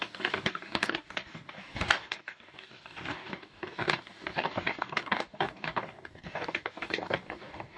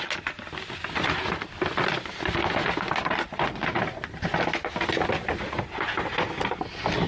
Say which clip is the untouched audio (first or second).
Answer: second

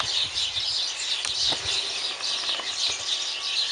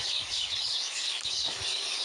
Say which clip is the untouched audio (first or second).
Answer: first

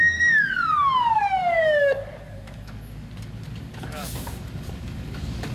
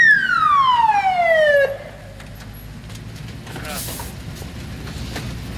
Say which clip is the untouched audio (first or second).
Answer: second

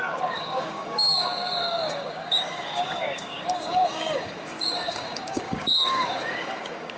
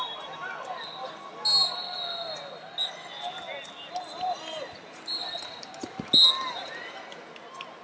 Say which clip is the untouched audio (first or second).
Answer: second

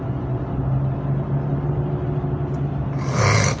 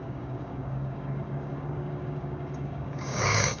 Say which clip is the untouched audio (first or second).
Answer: first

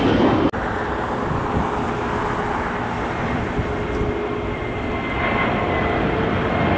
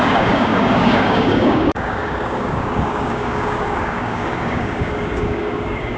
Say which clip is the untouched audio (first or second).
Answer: first